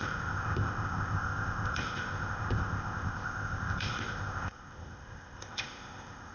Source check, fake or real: fake